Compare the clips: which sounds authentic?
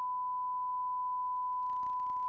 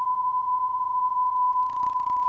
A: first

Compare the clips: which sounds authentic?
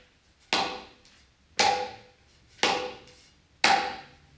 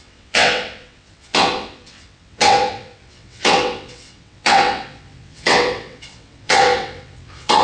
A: first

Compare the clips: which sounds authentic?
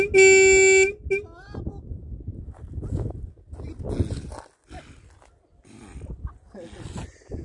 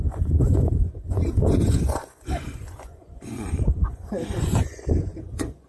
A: first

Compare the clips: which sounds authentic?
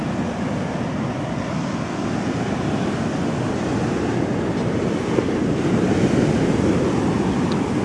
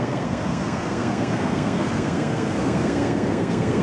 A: first